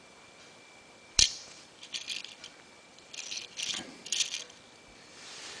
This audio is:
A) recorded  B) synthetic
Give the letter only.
B